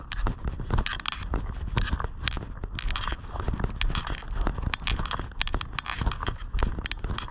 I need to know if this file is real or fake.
real